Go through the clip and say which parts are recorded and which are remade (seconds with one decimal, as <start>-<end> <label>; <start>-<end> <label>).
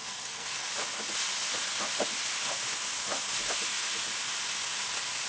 0.0-0.7 remade; 0.7-5.3 recorded